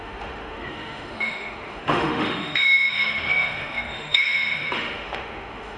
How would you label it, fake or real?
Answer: fake